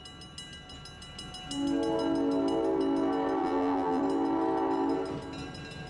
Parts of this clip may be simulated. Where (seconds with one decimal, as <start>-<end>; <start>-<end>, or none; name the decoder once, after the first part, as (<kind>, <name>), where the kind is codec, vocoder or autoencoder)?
3.4-4.0 (vocoder, BigVGAN v2)